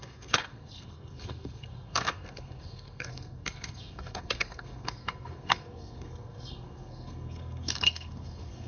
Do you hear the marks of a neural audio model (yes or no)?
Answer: yes